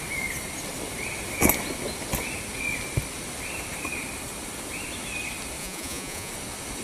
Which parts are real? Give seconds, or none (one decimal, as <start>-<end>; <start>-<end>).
0.0-5.6; 6.3-6.8